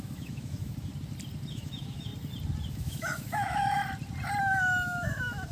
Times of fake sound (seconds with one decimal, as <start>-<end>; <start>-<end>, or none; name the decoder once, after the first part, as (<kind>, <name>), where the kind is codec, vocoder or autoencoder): 0.0-0.9 (autoencoder, DAC-VAE); 1.5-2.1; 2.7-3.8; 4.4-5.5